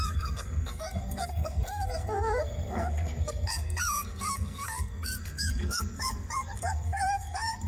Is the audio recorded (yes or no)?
no